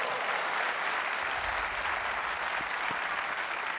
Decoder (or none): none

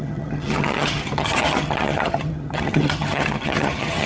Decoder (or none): vocoder, HiFi-GAN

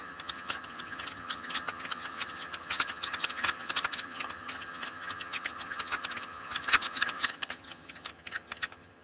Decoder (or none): vocoder, HiFi-GAN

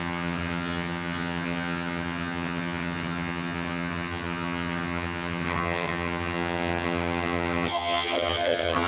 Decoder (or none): vocoder, HiFi-GAN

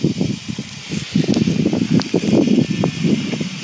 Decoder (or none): none